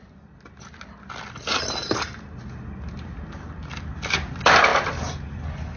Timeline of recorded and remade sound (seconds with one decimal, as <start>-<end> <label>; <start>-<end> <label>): 0.0-5.8 recorded